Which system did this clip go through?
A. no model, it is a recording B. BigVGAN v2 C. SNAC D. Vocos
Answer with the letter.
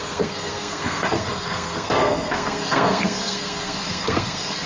C